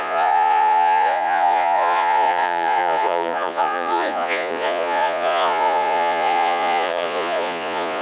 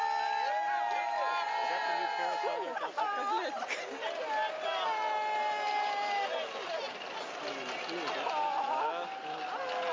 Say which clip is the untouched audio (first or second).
second